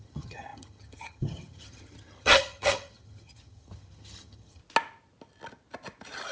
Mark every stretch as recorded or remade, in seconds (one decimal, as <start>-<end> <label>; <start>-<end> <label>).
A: 0.0-4.6 remade; 4.6-6.3 recorded